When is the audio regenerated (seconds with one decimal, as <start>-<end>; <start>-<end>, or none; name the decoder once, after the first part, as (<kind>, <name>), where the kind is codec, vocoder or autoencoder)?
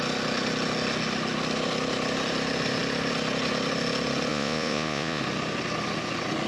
4.3-5.2 (vocoder, Vocos)